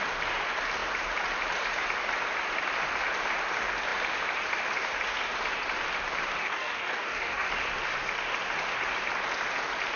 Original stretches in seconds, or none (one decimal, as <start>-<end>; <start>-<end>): 0.0-6.4; 7.5-10.0